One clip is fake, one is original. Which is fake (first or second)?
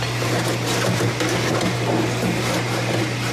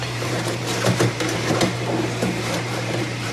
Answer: second